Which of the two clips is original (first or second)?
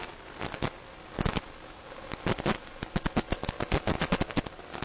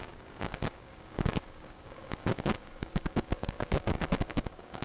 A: first